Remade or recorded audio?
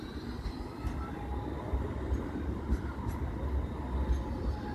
recorded